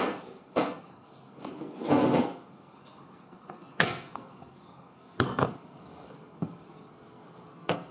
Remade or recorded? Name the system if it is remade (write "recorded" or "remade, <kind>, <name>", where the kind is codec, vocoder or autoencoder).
remade, codec, SNAC